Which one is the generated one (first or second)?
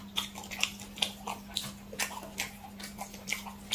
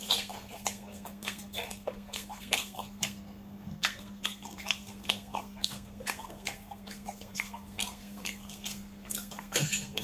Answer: second